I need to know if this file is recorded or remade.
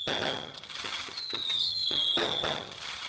remade